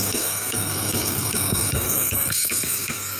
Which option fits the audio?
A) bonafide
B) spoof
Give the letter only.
B